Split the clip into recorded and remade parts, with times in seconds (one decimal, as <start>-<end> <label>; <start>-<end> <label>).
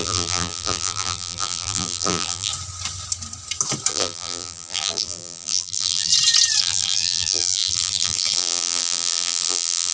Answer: 0.0-2.5 remade; 2.5-3.9 recorded; 3.9-6.1 remade; 6.1-6.6 recorded; 6.6-9.9 remade